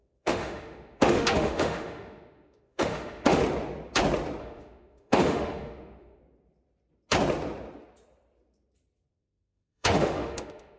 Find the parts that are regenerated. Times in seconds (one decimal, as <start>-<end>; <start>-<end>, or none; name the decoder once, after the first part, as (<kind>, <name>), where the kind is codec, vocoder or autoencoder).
0.0-3.4 (autoencoder, DAC-VAE); 4.4-6.2; 9.1-10.8